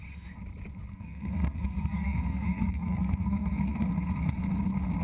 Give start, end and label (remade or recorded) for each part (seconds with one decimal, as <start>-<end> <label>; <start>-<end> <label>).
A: 0.0-0.9 recorded; 0.9-3.9 remade; 3.9-5.0 recorded